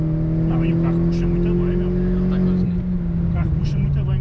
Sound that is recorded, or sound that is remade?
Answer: recorded